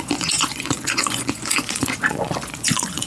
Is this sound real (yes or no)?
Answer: no